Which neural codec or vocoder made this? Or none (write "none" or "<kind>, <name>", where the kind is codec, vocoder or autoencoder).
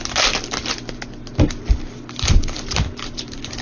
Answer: none